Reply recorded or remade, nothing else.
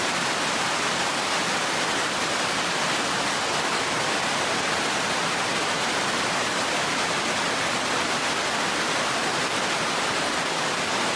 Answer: recorded